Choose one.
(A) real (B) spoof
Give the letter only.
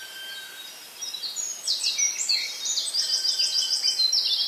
B